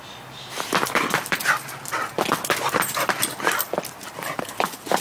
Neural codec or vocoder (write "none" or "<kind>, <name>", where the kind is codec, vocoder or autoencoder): vocoder, BigVGAN v2